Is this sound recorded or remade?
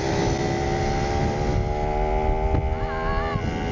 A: recorded